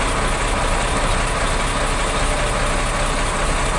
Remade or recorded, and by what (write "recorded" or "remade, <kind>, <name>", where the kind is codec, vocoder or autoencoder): recorded